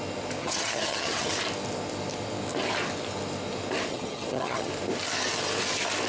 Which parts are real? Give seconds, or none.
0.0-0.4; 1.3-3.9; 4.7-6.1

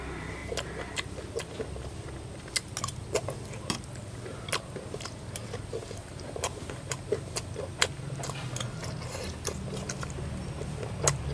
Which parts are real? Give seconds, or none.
0.0-6.0; 7.4-11.3

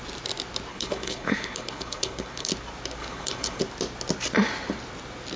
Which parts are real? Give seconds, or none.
0.0-0.7; 2.5-3.0; 3.6-5.4

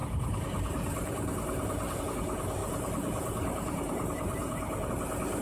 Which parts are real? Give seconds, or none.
0.0-2.6; 4.9-5.4

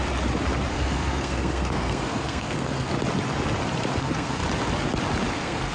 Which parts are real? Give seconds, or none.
0.0-0.7; 2.9-4.0; 4.4-5.3

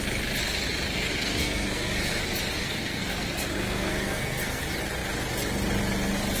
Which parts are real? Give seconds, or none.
0.0-0.9; 2.2-2.6; 4.6-6.4

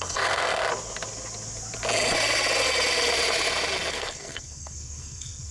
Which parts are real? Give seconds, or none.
0.6-3.9